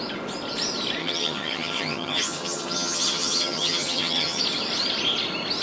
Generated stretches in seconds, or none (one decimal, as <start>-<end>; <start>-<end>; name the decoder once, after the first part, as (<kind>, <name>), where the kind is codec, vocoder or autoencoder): 1.0-4.4 (vocoder, HiFi-GAN)